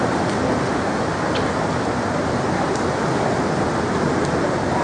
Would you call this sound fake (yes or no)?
no